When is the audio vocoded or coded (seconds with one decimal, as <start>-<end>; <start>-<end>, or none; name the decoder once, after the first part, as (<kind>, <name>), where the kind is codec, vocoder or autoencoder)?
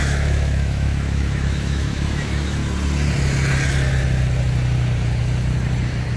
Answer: 0.0-2.6 (autoencoder, DAC-VAE)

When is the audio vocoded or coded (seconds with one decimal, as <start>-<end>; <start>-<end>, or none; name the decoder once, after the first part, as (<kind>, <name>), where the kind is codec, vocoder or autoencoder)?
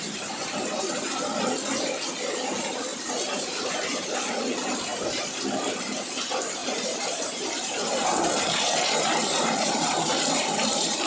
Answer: 2.9-3.6 (vocoder, BigVGAN v2); 6.6-11.1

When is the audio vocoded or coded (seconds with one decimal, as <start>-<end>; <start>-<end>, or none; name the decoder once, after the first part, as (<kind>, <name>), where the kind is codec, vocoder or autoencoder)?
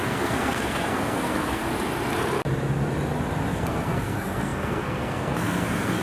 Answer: 0.0-1.6 (codec, SNAC); 3.5-6.0